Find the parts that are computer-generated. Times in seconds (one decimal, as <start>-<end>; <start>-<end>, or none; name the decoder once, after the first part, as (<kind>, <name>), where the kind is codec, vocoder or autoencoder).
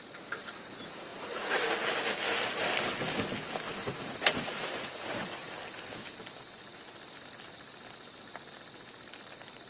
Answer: 1.1-1.6 (vocoder, Vocos); 3.8-5.5